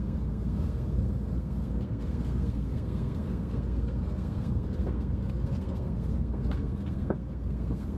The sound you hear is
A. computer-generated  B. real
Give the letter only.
A